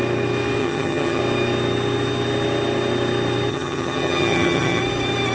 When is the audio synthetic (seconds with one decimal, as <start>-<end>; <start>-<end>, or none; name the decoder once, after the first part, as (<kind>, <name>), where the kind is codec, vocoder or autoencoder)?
0.6-1.2 (vocoder, HiFi-GAN); 3.5-4.8